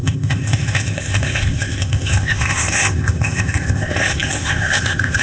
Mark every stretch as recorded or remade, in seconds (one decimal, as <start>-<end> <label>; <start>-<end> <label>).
0.0-5.2 remade